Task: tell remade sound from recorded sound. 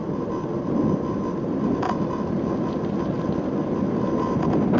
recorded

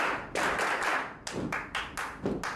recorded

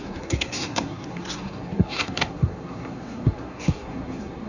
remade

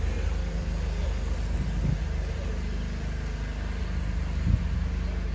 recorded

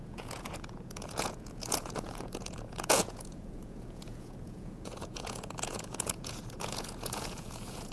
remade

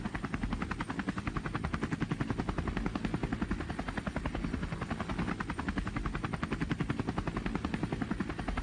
recorded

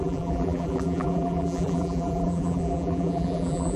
remade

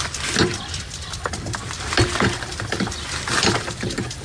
recorded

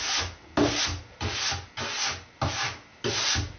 recorded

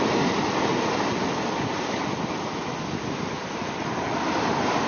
recorded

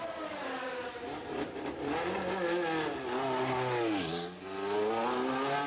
recorded